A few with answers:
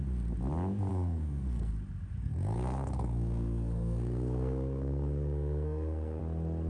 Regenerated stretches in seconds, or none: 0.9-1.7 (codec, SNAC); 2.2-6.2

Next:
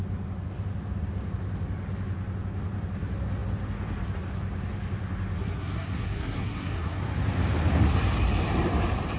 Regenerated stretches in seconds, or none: 5.4-7.0 (codec, SNAC)

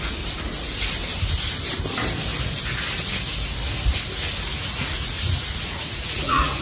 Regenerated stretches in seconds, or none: 4.5-6.6 (vocoder, Vocos)

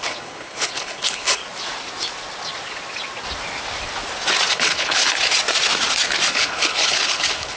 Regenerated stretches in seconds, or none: 0.0-1.4 (codec, HILCodec); 4.5-5.0; 6.3-7.6

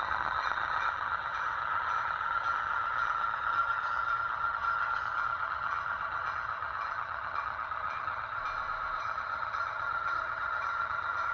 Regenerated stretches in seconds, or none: 0.0-8.4 (vocoder, HiFi-GAN); 9.0-11.3

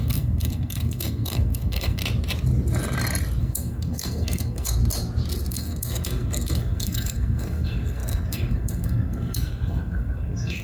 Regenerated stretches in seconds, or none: 0.0-2.0 (codec, SNAC); 3.4-4.8; 5.5-10.6

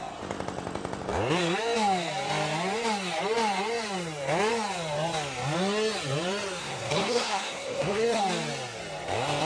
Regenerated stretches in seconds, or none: 6.6-8.2 (codec, SNAC)